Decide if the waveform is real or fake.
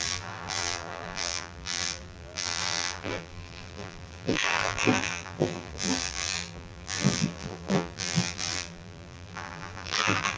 fake